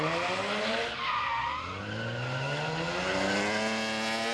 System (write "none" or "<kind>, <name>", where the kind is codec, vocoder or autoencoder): none